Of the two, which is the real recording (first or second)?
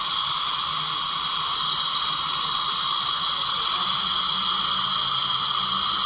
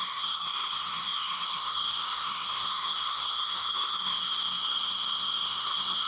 first